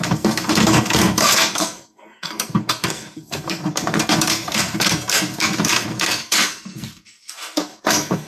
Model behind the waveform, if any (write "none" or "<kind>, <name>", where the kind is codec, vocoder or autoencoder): codec, SNAC